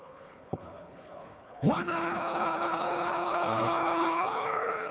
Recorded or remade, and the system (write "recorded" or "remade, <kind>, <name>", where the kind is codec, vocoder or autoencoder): remade, codec, HILCodec